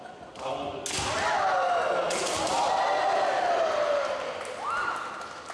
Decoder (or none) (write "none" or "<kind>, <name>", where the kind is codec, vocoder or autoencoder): none